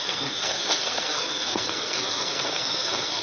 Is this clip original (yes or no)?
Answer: no